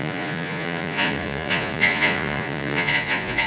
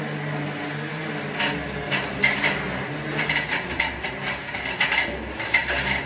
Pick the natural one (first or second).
second